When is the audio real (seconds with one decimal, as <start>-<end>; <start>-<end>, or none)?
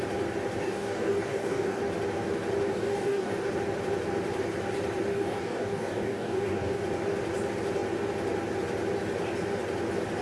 0.0-0.6; 1.8-2.7; 3.5-5.1; 6.8-10.2